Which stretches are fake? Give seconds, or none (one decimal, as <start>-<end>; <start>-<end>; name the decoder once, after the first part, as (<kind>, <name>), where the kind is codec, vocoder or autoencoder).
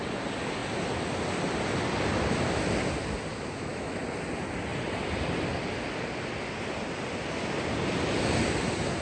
3.3-4.0 (autoencoder, DAC-VAE)